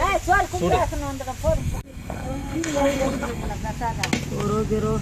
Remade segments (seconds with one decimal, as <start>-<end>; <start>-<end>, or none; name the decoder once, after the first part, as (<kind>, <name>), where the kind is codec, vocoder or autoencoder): 1.6-3.5 (codec, SNAC)